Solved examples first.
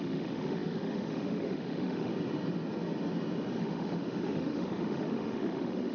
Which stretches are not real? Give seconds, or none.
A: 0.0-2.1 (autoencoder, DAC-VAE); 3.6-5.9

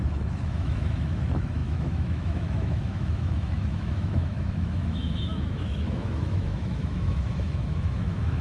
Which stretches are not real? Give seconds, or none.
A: 0.0-8.4 (autoencoder, DAC-VAE)